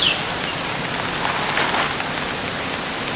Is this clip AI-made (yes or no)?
no